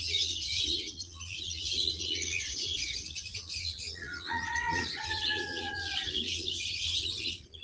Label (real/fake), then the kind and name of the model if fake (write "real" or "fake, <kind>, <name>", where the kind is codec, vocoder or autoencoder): fake, vocoder, Vocos